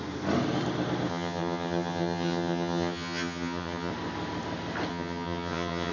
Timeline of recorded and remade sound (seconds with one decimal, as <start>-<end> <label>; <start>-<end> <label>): 0.0-1.1 recorded; 1.1-3.9 remade; 3.9-4.9 recorded; 4.9-5.9 remade